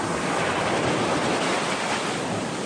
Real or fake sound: real